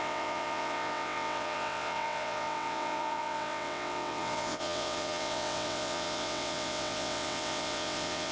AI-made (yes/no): yes